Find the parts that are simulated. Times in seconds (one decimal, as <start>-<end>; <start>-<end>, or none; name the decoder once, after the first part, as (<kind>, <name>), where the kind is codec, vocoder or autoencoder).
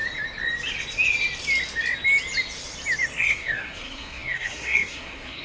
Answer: 3.2-5.4 (codec, SNAC)